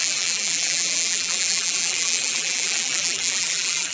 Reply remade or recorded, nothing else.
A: remade